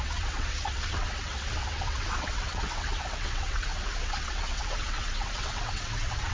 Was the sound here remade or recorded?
remade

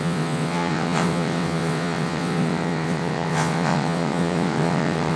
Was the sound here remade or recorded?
remade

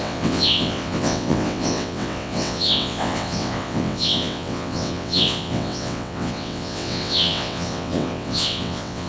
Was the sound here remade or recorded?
remade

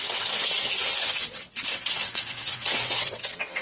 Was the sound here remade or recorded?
remade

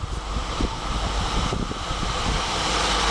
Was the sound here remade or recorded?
recorded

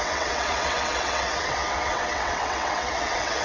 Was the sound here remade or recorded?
remade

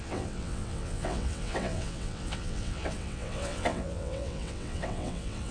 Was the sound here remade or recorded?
remade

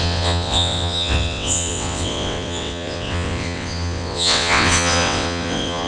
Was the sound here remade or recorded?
remade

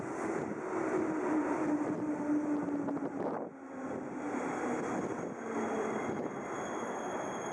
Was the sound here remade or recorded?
recorded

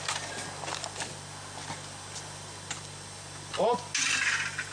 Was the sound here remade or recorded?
recorded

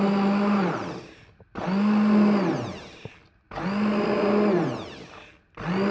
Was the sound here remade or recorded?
recorded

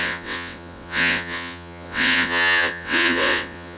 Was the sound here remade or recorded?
remade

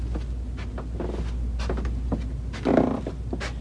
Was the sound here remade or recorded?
recorded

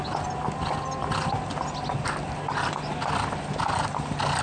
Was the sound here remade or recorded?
recorded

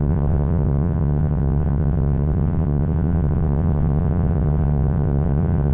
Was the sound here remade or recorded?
remade